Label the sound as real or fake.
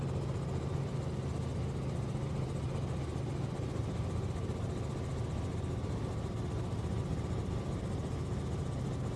real